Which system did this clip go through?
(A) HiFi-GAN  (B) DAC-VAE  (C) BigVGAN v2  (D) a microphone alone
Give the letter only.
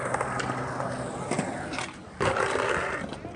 D